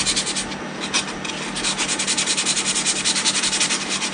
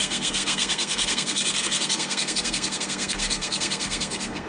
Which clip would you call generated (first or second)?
second